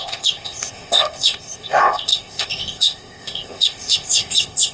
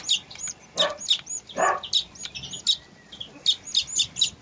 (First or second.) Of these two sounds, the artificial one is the first